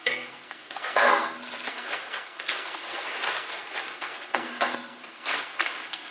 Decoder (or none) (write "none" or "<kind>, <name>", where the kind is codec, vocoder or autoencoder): codec, SNAC